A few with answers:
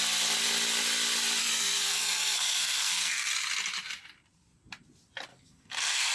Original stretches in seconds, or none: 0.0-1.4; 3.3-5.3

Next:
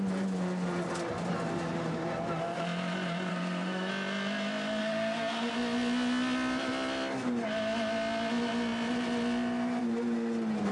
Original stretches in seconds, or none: 0.0-3.3; 3.9-4.8; 5.5-10.7

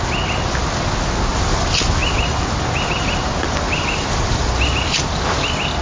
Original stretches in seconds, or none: 0.0-5.8

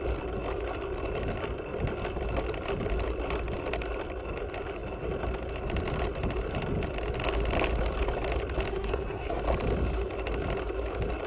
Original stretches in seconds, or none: 0.0-8.7; 9.4-11.3

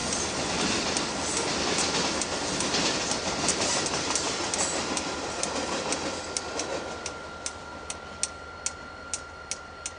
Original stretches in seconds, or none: 0.0-10.0

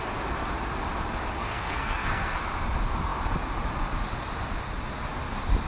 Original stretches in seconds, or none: 0.0-1.4; 2.4-5.7

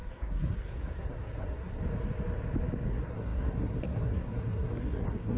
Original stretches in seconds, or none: 1.8-2.9